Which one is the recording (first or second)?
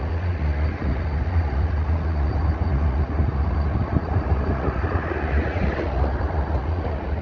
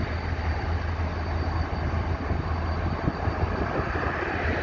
second